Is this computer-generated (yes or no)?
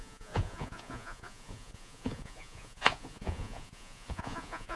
yes